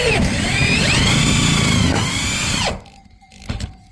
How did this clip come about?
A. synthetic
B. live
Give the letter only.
A